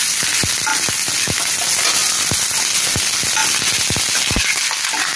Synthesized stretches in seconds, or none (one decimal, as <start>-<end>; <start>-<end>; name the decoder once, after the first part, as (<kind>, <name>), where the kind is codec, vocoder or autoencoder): none